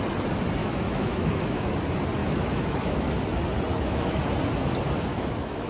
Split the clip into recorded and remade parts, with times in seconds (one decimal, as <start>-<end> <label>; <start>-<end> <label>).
0.0-0.6 recorded; 0.6-1.7 remade; 1.7-2.2 recorded; 2.2-3.1 remade; 3.1-3.7 recorded; 3.7-4.2 remade; 4.2-5.1 recorded; 5.1-5.7 remade